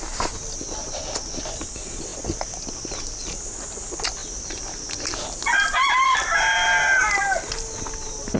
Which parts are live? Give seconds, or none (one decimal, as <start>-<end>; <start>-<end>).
0.0-8.4